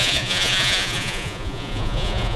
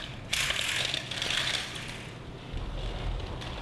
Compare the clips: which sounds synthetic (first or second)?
first